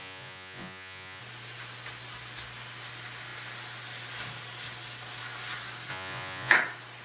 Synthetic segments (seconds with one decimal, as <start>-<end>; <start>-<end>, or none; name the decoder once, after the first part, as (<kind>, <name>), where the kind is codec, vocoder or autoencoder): 0.0-1.2 (vocoder, Vocos); 5.9-6.5